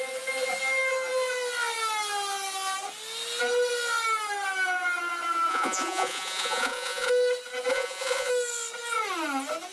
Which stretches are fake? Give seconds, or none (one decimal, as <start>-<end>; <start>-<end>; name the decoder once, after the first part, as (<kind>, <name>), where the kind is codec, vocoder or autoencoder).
5.5-7.1 (vocoder, Vocos); 7.7-8.3